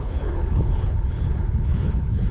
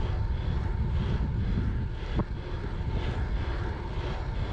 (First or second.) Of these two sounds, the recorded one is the second